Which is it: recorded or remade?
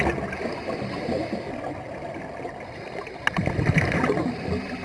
recorded